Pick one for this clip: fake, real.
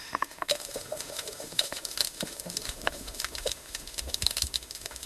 fake